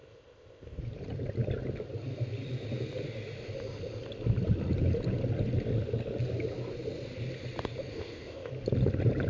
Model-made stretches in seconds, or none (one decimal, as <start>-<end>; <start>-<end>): 0.0-0.8; 7.9-8.5